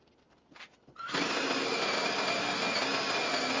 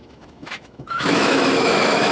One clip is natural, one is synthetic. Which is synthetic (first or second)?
second